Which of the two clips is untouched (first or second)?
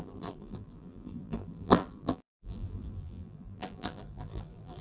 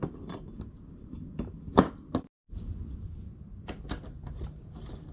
second